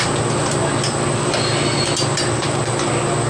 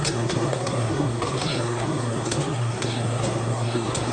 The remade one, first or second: second